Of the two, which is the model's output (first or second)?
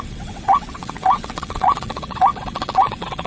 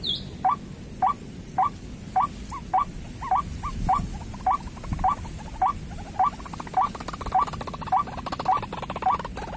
first